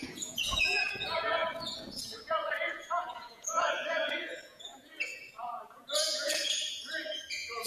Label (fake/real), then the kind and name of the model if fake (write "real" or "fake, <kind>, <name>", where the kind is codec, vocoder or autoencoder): fake, vocoder, Vocos